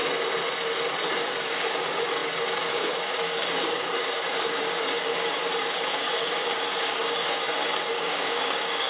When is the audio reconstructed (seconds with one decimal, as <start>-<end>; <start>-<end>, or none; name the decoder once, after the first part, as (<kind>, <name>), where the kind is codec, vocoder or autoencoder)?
1.1-8.9 (codec, DAC)